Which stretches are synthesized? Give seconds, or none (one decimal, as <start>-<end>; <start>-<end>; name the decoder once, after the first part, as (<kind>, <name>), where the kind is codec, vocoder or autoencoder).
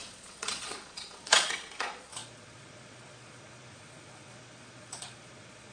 0.0-5.7 (vocoder, Vocos)